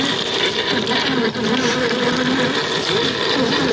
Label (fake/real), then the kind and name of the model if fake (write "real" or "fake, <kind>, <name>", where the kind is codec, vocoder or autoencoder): real